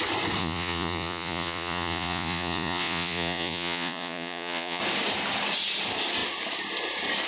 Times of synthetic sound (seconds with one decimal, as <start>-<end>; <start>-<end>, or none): 0.4-4.8